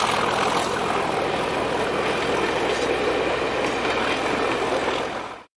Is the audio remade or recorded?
recorded